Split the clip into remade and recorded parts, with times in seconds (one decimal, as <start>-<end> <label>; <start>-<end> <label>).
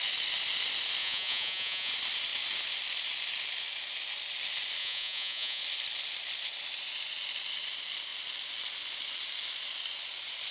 0.0-1.0 recorded; 1.0-1.9 remade; 1.9-4.8 recorded; 4.8-5.6 remade; 5.6-10.5 recorded